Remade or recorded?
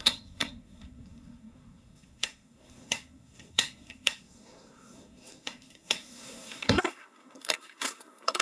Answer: remade